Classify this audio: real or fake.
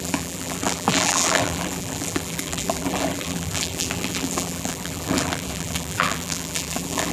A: fake